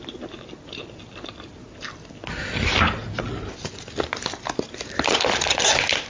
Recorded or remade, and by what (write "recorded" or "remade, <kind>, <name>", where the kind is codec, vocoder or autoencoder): recorded